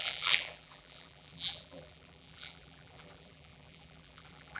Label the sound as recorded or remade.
remade